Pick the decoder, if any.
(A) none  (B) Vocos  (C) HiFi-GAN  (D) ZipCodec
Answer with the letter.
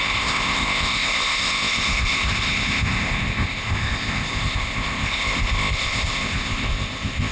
D